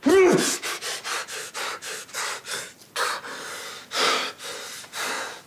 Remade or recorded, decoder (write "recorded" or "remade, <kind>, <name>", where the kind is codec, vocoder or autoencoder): recorded